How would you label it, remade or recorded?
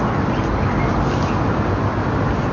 recorded